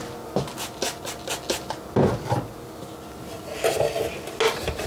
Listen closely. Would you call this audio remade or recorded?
recorded